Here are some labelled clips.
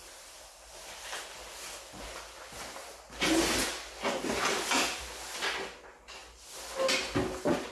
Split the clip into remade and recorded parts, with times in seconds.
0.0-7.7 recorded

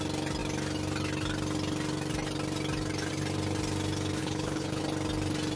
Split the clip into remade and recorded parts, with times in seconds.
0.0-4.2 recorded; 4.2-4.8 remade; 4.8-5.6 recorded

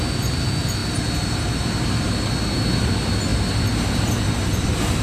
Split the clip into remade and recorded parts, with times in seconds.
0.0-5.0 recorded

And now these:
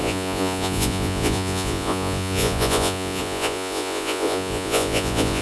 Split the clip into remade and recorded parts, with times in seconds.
0.0-5.4 remade